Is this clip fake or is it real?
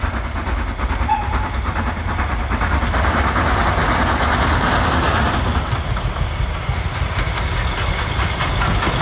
real